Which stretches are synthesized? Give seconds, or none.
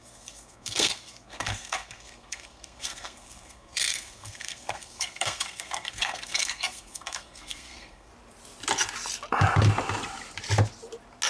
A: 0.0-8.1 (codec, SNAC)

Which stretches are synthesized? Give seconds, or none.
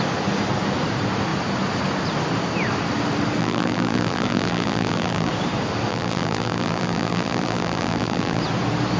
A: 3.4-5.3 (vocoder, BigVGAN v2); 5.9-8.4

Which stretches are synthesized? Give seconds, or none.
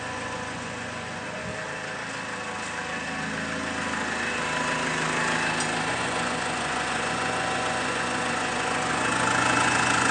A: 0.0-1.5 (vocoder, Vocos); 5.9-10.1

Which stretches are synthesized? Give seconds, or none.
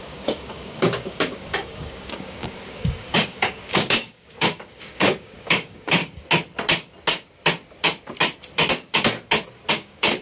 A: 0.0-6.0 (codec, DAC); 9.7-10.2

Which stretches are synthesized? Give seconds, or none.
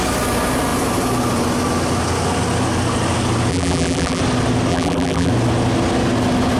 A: 3.5-4.2 (vocoder, BigVGAN v2); 4.7-5.3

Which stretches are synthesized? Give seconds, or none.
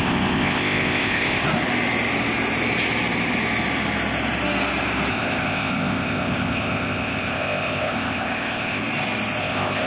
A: 0.0-1.4 (codec, ZipCodec); 5.1-8.8; 9.4-9.9